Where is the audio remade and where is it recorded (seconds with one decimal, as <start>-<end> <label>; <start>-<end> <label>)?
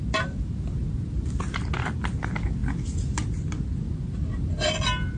0.0-5.2 recorded